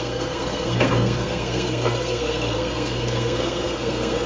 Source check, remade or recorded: remade